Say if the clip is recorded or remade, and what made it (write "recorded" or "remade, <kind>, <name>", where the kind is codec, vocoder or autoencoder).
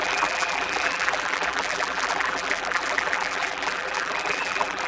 remade, vocoder, BigVGAN v2